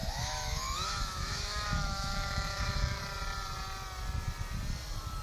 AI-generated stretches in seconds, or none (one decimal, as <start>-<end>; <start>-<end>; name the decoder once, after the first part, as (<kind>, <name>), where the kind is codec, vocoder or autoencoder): 0.0-3.0 (autoencoder, DAC-VAE)